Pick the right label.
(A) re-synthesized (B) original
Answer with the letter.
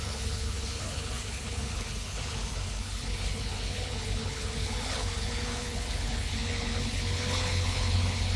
A